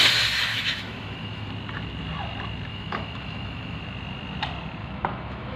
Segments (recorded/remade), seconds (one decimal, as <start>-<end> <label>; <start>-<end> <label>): 0.0-0.5 recorded; 0.5-1.5 remade; 1.5-2.7 recorded; 2.7-3.8 remade; 3.8-4.8 recorded; 4.8-5.6 remade

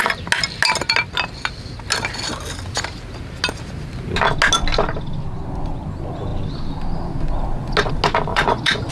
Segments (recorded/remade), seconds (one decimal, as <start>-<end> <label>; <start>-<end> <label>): 0.0-8.3 recorded; 8.3-8.9 remade

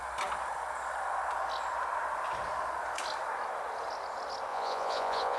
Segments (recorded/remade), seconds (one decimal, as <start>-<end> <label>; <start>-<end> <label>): 0.0-4.5 recorded; 4.5-5.4 remade

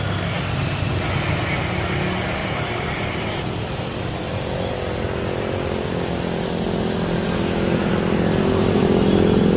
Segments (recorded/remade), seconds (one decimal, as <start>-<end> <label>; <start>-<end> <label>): 0.0-2.4 recorded; 2.4-3.3 remade; 3.3-9.6 recorded

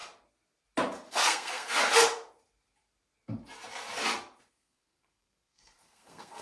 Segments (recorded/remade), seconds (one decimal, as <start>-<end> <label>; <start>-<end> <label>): 0.0-1.1 recorded; 1.1-1.8 remade; 1.8-4.5 recorded; 4.5-6.4 remade

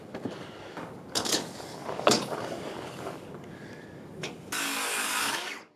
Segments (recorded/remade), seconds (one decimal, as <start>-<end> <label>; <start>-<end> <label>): 0.0-5.8 remade